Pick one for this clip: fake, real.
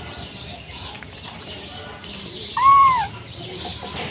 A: real